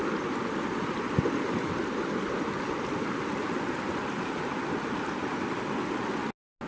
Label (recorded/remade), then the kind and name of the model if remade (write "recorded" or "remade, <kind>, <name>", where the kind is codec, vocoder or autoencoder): recorded